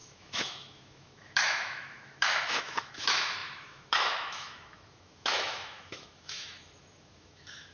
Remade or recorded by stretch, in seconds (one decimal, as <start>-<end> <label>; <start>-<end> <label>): 0.0-7.7 remade

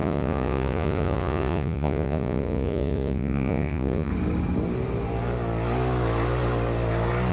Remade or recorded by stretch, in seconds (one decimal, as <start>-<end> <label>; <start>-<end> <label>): 0.0-4.1 remade; 4.1-7.3 recorded

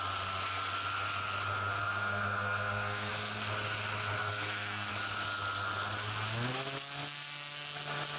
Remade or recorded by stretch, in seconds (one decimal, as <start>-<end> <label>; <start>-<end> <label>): 0.0-1.8 recorded; 1.8-3.1 remade; 3.1-4.2 recorded; 4.2-4.9 remade; 4.9-8.2 recorded

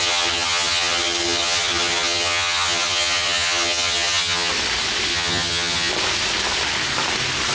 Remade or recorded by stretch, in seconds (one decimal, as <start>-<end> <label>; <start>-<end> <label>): 0.0-4.5 remade; 4.5-5.1 recorded; 5.1-5.9 remade; 5.9-7.5 recorded

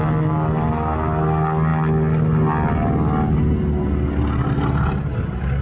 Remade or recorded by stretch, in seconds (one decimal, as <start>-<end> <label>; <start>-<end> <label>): 0.0-5.6 recorded

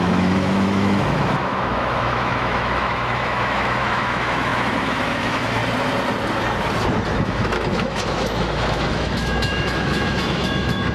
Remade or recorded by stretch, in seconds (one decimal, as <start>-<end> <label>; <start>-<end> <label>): 0.0-5.6 remade; 5.6-7.1 recorded; 7.1-10.9 remade

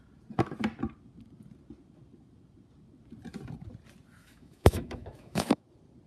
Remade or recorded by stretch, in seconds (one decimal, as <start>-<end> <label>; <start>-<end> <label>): 0.0-4.2 recorded; 4.2-5.6 remade; 5.6-6.1 recorded

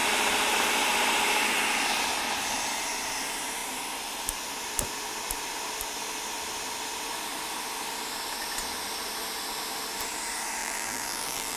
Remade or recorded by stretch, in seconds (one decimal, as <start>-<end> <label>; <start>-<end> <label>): 0.0-10.6 recorded; 10.6-11.6 remade